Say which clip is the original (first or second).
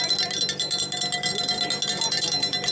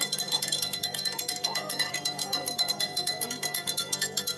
first